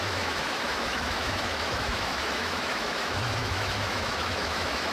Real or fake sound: fake